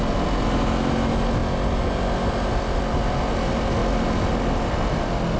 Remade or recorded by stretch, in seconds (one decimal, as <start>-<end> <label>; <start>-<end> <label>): 0.0-5.4 recorded